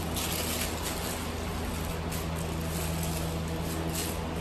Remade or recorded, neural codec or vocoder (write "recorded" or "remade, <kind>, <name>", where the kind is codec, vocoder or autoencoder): recorded